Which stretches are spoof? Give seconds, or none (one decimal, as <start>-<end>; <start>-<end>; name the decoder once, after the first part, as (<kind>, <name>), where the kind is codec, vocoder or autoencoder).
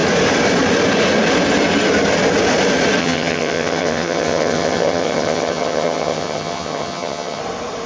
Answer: 3.0-7.4 (vocoder, HiFi-GAN)